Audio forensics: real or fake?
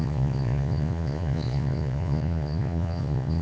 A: fake